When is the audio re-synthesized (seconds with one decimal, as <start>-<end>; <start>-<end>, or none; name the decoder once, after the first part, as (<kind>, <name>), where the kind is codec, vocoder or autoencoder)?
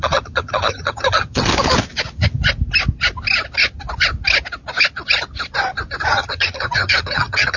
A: 0.0-1.5 (vocoder, HiFi-GAN); 6.1-7.6